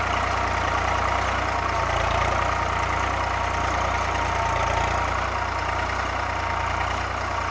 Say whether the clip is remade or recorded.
recorded